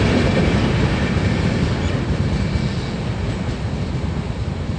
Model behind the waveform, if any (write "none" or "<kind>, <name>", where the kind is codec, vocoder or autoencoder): none